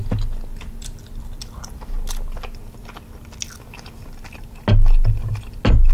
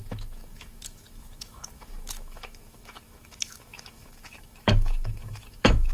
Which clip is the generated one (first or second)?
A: second